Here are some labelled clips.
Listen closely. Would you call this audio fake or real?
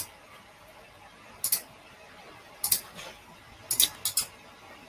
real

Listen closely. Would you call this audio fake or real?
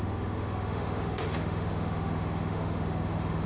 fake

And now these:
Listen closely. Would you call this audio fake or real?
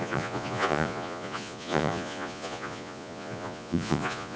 fake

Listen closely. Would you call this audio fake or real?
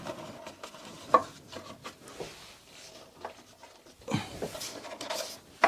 real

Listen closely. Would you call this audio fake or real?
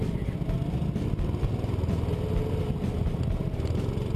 real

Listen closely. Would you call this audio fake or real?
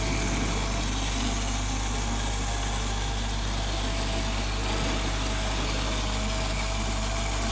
real